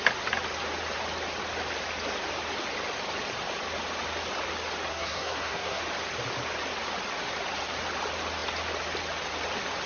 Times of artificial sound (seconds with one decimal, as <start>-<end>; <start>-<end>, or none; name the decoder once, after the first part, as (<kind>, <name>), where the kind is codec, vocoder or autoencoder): 4.9-5.8 (codec, SNAC)